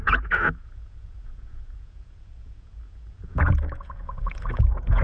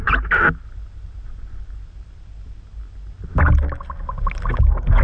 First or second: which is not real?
first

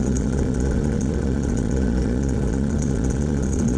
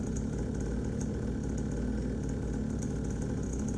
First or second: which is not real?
first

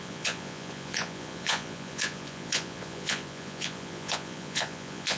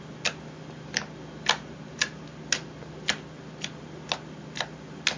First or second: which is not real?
first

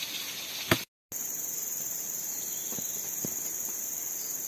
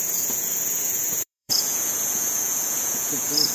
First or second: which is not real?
second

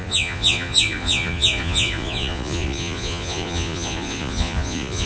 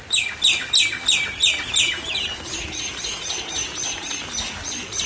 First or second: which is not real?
first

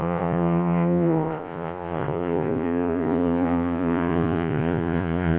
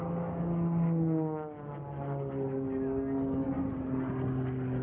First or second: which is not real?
first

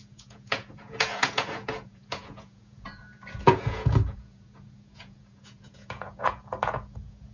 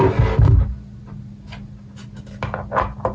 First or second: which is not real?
first